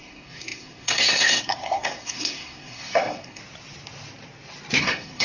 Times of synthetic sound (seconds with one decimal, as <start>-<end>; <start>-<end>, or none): 0.0-3.4; 4.8-5.2